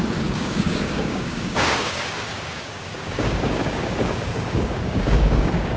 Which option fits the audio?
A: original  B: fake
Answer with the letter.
B